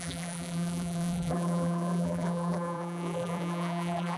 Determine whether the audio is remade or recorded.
remade